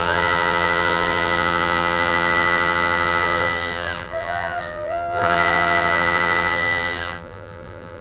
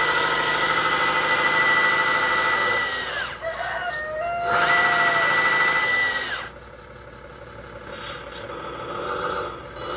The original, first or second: second